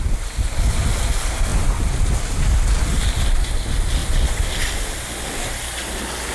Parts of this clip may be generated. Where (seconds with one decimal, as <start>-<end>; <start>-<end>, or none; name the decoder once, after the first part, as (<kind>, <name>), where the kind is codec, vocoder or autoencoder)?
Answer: none